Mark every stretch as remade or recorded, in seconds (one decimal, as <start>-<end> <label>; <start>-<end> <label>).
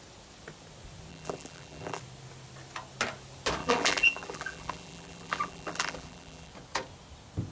0.0-1.1 recorded; 1.1-2.0 remade; 2.0-3.6 recorded; 3.6-6.5 remade; 6.5-7.5 recorded